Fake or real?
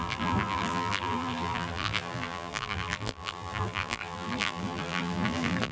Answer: fake